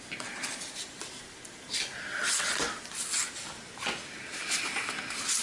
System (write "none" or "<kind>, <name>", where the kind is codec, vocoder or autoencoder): none